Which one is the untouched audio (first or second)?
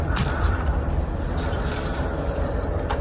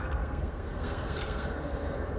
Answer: first